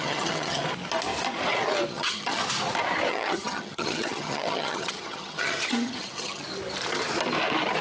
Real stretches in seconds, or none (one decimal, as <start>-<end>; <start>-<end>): 0.6-1.9; 2.4-3.1; 6.4-7.8